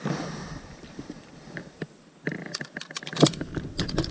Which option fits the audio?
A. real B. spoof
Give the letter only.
B